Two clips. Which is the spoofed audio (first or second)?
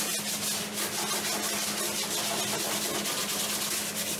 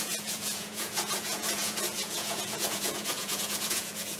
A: second